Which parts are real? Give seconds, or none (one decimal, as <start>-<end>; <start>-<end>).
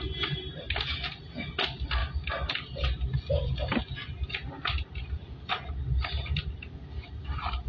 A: 0.0-7.7